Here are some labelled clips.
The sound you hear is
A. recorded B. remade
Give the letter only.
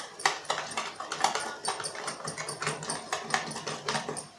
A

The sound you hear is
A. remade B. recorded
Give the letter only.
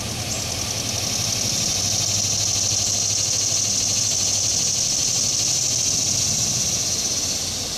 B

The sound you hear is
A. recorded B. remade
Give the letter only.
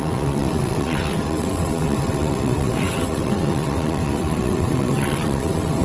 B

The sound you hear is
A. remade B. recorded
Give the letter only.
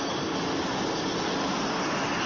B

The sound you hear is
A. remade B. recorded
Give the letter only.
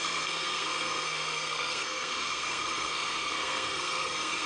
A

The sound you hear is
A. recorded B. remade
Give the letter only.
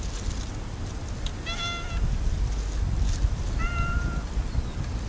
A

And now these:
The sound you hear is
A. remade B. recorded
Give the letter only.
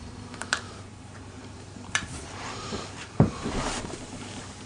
A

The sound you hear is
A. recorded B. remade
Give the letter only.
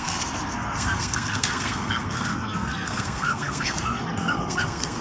B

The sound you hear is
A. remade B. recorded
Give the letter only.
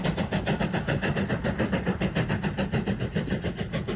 B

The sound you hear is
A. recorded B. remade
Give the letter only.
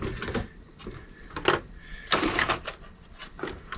A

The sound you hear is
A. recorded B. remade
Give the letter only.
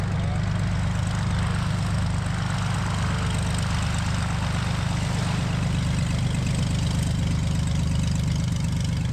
A